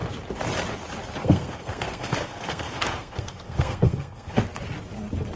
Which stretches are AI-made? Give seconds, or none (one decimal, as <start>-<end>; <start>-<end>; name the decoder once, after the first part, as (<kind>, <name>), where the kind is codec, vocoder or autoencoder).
1.2-4.4 (codec, SNAC)